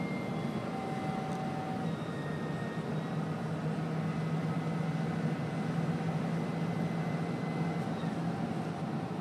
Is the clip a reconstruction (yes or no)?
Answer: no